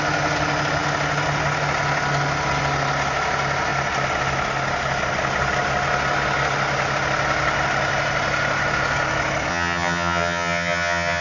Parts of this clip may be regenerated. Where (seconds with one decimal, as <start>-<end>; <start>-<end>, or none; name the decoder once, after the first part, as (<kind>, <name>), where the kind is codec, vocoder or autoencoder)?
9.5-11.2 (vocoder, HiFi-GAN)